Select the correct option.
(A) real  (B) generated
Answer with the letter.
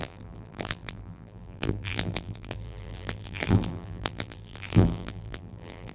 B